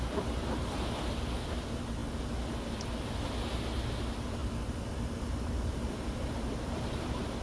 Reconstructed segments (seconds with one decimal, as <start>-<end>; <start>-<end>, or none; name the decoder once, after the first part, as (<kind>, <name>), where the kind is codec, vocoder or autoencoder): none